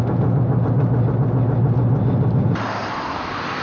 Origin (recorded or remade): recorded